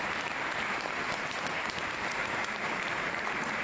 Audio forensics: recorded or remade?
remade